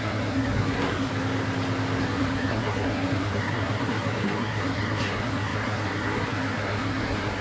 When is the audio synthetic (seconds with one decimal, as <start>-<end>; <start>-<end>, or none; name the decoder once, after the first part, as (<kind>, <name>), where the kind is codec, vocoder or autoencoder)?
0.0-1.1 (codec, SNAC); 2.0-7.4

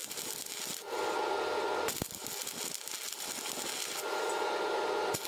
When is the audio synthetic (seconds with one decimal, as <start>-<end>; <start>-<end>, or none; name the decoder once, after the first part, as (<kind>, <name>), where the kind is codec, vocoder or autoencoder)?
none

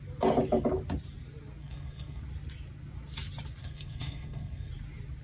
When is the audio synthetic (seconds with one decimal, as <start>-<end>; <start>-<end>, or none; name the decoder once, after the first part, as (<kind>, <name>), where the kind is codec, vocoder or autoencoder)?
1.6-2.2 (codec, SNAC); 3.6-4.7

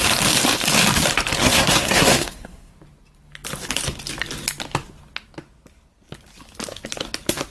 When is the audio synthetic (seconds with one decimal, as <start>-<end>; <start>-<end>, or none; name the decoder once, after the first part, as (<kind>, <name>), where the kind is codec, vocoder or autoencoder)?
1.4-2.7 (codec, SNAC)

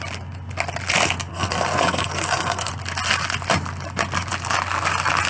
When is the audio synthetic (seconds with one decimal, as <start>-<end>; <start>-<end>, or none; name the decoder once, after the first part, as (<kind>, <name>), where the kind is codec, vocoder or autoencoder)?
1.3-2.7 (codec, SNAC)

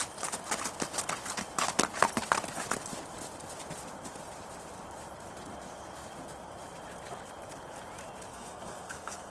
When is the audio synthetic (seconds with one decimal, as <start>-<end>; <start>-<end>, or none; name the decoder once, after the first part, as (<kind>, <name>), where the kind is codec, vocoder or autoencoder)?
8.3-9.3 (codec, SNAC)